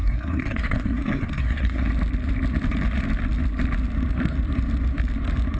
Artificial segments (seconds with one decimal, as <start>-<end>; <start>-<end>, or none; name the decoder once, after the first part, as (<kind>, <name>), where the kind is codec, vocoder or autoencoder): 0.0-1.9 (codec, SNAC)